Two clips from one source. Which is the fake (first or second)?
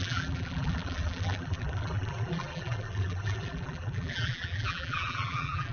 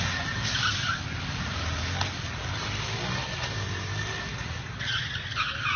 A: first